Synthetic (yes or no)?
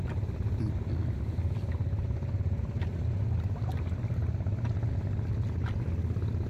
no